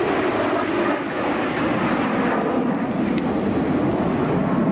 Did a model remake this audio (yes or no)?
no